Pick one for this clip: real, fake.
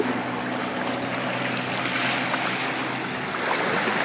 real